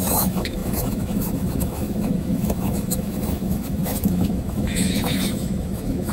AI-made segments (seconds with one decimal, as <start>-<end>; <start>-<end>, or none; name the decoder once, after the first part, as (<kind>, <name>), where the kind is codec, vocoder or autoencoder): 0.0-6.1 (autoencoder, DAC-VAE)